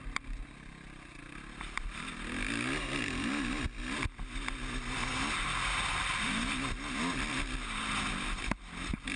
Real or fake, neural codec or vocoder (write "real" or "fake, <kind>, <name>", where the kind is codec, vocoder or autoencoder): real